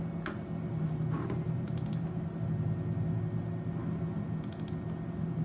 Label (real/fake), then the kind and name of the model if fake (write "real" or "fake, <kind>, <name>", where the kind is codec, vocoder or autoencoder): real